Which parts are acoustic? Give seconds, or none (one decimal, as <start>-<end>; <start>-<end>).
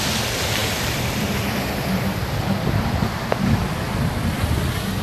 0.0-0.6; 3.6-5.0